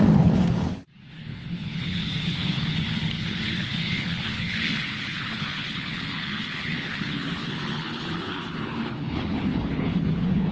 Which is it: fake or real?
fake